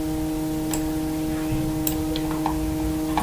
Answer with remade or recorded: recorded